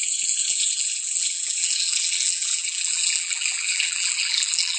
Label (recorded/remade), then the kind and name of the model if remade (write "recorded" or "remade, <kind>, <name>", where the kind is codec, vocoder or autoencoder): remade, vocoder, BigVGAN v2